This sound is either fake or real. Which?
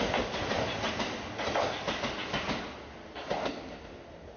real